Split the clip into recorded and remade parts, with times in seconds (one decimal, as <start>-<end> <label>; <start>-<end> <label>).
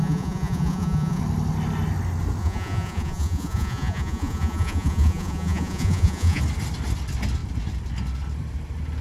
0.0-1.2 remade; 1.2-2.4 recorded; 2.4-6.4 remade; 6.4-9.0 recorded